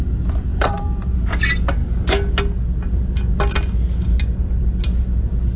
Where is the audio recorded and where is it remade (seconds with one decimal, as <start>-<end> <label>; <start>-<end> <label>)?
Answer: 0.0-0.5 recorded; 0.5-1.1 remade; 1.1-5.6 recorded